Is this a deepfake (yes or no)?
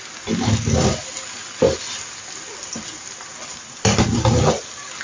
no